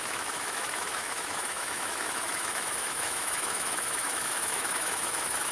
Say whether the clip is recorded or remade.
remade